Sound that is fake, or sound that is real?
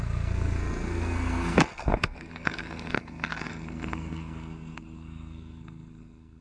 fake